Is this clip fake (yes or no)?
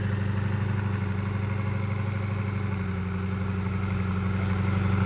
no